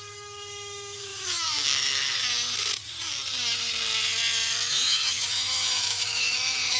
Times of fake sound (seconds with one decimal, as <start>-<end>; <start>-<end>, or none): 0.0-2.2; 4.7-6.8